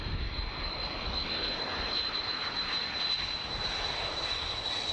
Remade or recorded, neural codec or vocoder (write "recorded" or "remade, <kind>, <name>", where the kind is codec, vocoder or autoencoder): recorded